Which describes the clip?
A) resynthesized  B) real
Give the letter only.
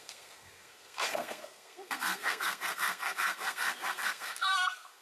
A